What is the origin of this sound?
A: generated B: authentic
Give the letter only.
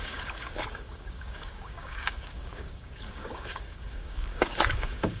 A